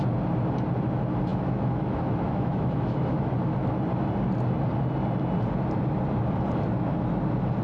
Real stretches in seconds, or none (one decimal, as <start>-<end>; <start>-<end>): 0.0-1.3; 3.3-7.6